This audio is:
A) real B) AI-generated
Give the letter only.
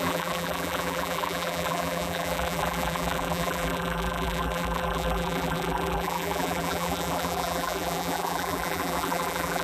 B